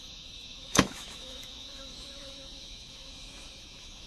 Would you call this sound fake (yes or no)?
yes